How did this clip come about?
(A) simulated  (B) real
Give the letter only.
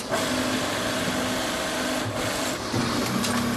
B